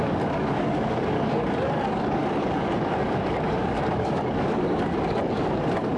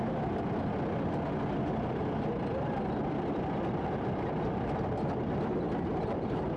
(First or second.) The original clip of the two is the second